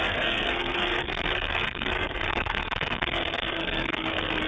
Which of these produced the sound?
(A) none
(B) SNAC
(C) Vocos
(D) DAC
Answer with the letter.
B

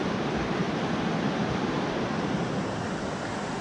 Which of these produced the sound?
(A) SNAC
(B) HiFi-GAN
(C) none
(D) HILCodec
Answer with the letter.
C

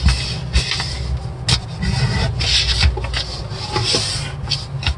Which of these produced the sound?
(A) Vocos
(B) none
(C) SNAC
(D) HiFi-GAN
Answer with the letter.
B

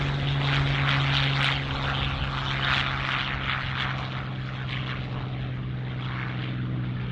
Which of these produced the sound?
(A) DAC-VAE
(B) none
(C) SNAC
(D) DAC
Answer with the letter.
B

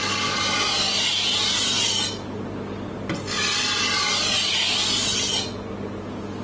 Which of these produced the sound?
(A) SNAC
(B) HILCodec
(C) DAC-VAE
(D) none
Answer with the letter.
D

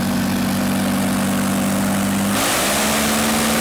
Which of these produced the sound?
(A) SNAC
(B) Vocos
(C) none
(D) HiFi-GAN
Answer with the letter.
C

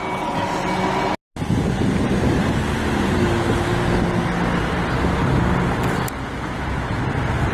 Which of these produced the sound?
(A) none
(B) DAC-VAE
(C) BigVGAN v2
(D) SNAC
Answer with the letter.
A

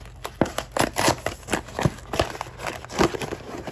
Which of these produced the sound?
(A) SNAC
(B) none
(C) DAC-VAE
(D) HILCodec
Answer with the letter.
B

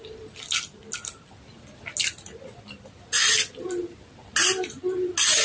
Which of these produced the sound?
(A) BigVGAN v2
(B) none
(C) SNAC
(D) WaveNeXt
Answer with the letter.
B